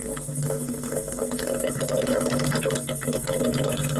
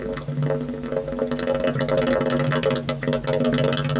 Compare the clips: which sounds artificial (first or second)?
first